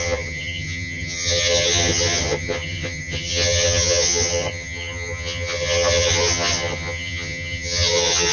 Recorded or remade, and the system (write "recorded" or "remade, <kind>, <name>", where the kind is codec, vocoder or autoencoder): remade, vocoder, HiFi-GAN